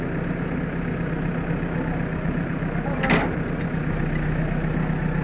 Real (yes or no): yes